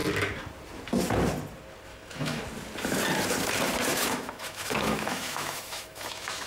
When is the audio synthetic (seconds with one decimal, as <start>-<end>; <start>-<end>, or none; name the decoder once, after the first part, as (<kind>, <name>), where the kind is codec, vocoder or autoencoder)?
1.9-2.4 (autoencoder, DAC-VAE); 3.9-6.5